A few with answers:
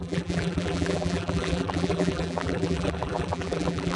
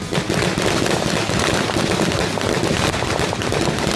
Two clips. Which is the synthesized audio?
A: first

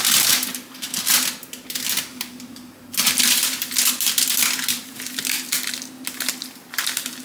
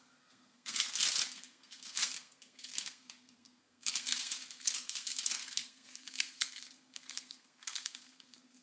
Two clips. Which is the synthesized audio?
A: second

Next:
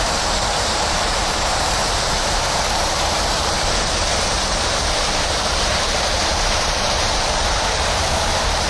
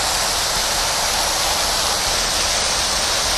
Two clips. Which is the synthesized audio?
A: first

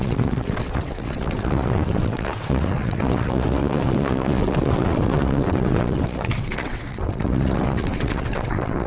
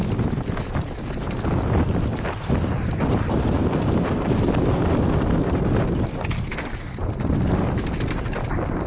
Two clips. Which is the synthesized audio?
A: first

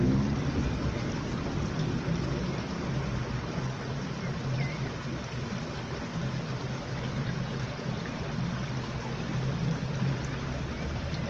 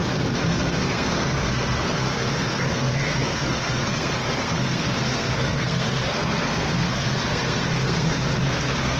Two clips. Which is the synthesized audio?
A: second